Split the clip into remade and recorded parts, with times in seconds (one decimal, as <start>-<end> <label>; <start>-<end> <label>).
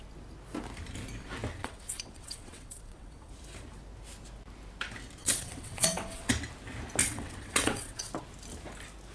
0.0-1.6 recorded; 1.6-3.3 remade; 3.3-5.2 recorded; 5.2-6.3 remade; 6.3-7.0 recorded; 7.0-8.1 remade; 8.1-9.1 recorded